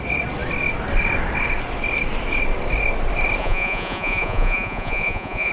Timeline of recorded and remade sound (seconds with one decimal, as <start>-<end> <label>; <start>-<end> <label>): 0.0-3.4 recorded; 3.4-5.5 remade